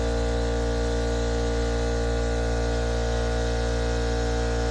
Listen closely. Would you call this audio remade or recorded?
recorded